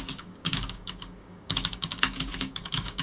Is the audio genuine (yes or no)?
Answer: no